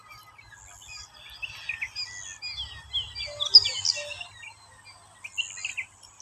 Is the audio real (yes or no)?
yes